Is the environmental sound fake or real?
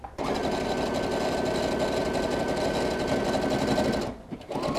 real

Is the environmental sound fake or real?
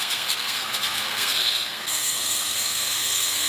fake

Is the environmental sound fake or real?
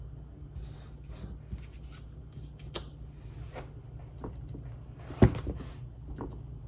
real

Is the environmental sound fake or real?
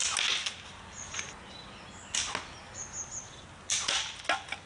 real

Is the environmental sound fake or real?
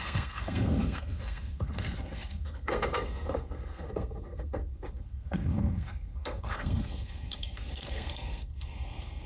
fake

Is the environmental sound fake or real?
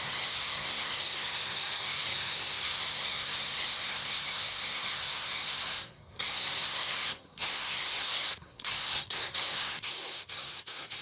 fake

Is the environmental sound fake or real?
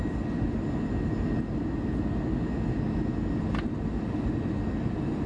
real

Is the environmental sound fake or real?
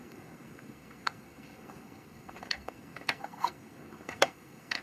fake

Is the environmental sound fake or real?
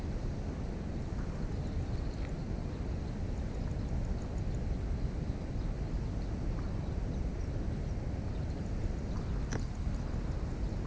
real